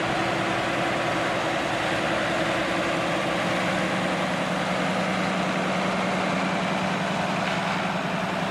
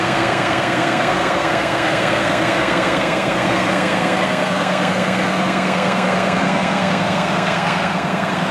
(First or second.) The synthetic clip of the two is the second